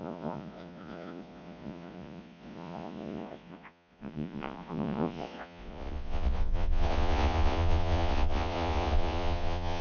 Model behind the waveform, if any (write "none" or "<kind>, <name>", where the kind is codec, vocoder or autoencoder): vocoder, Vocos